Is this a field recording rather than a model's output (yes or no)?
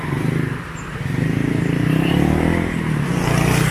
yes